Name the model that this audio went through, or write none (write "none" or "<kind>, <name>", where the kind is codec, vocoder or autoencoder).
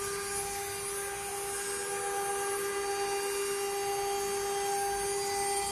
none